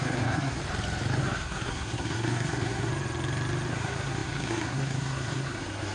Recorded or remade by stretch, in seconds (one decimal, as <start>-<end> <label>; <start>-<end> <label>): 0.0-0.6 remade; 0.6-1.2 recorded; 1.2-2.9 remade; 2.9-3.7 recorded; 3.7-5.9 remade